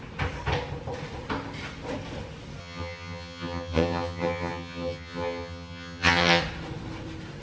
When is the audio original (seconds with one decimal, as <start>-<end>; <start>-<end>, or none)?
0.0-2.6; 6.4-7.4